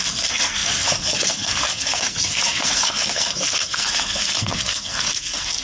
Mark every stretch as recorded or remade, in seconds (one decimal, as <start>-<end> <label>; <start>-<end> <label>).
0.0-5.6 remade